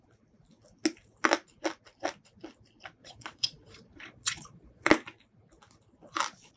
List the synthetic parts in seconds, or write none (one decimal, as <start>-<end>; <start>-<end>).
3.0-4.9